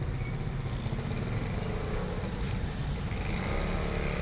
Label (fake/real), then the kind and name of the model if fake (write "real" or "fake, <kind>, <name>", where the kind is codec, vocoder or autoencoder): real